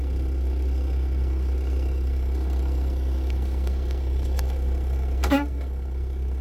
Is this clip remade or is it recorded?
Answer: remade